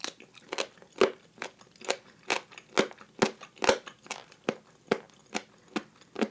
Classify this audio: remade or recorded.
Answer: recorded